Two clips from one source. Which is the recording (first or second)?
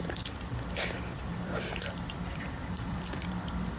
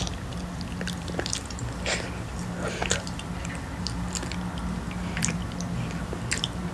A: second